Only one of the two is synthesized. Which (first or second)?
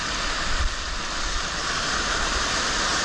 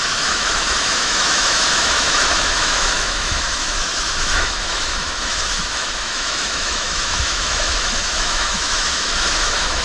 second